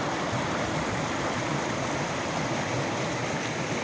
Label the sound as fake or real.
real